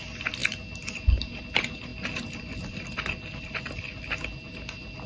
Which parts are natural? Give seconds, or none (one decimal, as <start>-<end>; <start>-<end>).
0.0-5.1